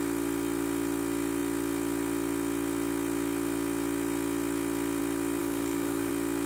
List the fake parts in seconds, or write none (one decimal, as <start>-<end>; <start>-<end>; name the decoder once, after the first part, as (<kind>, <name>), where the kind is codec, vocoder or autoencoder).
5.4-6.1 (codec, DAC)